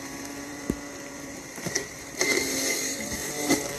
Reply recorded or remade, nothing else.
remade